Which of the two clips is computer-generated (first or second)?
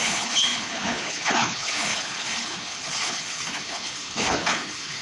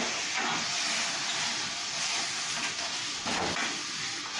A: first